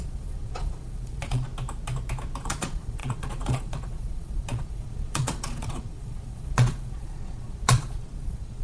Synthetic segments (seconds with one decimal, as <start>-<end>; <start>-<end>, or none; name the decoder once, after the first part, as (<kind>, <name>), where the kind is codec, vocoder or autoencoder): 0.0-1.5 (vocoder, Vocos); 2.4-8.6